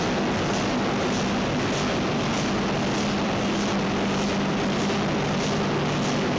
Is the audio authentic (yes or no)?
yes